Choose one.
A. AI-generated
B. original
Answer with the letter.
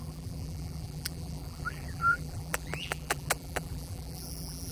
A